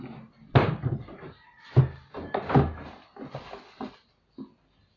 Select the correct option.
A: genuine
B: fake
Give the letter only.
A